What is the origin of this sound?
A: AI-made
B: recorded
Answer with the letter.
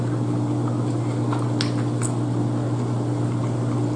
B